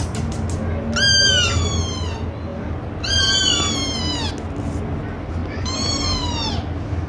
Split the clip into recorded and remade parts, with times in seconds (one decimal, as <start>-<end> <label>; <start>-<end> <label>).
0.0-5.4 recorded; 5.4-6.5 remade; 6.5-7.1 recorded